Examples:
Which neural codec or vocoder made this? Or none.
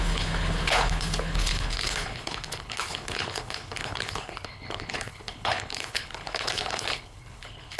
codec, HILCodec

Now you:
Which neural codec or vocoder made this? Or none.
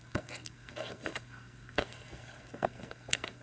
codec, SNAC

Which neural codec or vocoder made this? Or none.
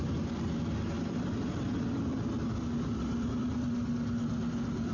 none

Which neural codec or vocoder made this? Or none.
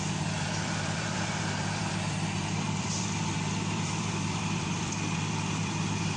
vocoder, BigVGAN v2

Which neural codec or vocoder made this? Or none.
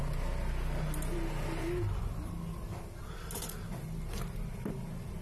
none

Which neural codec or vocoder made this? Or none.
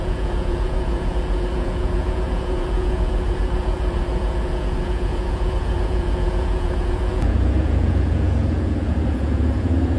vocoder, Vocos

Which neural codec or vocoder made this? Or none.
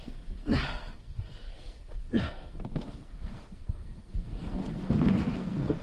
codec, SNAC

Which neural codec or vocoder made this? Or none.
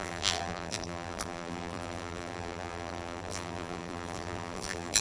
vocoder, BigVGAN v2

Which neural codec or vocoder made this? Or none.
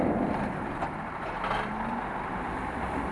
none